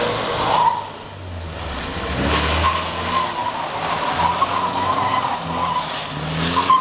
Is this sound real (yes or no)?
yes